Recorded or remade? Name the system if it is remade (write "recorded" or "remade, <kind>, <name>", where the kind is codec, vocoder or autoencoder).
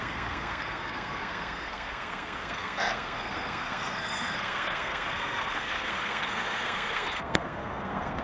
remade, codec, SNAC